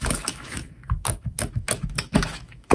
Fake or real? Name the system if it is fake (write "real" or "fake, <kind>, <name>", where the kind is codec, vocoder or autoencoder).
fake, autoencoder, DAC-VAE